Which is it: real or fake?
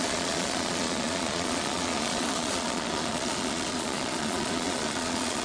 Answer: fake